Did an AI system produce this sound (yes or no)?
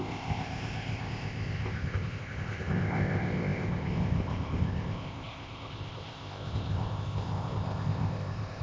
yes